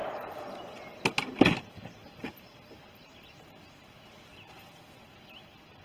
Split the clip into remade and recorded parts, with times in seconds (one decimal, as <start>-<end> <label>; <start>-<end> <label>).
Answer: 0.0-5.8 recorded